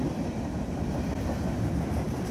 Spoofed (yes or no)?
yes